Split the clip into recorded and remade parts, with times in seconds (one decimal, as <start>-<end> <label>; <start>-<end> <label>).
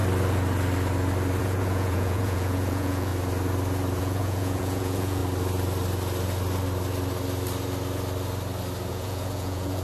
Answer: 0.0-1.4 recorded; 1.4-3.1 remade; 3.1-4.0 recorded; 4.0-5.2 remade; 5.2-8.9 recorded; 8.9-9.8 remade